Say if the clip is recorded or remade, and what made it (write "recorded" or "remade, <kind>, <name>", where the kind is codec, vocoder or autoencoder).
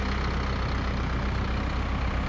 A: recorded